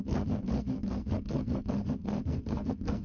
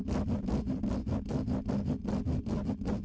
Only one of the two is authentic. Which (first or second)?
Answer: second